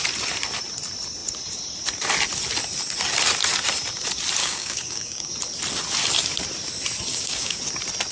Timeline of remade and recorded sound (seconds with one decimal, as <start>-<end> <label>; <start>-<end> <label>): 0.0-4.4 recorded; 4.4-5.3 remade; 5.3-7.1 recorded; 7.1-7.6 remade; 7.6-8.1 recorded